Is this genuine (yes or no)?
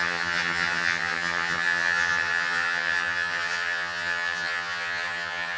no